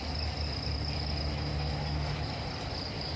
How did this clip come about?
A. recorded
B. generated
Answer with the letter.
A